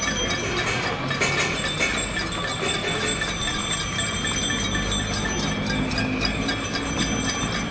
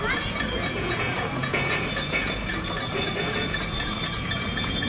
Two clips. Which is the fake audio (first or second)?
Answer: second